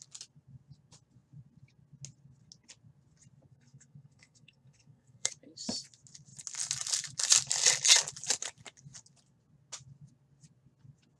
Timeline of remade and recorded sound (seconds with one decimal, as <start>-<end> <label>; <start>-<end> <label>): 0.0-3.5 recorded; 3.5-5.3 remade; 5.3-11.2 recorded

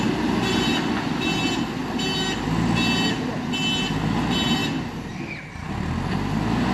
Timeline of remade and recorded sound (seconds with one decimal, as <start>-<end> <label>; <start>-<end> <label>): 0.0-6.7 recorded